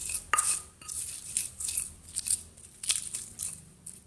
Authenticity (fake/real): real